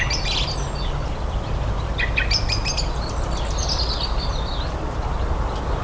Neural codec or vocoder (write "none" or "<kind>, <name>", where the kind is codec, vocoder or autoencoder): none